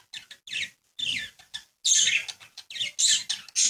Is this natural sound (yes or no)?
yes